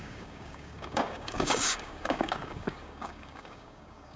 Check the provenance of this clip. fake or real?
fake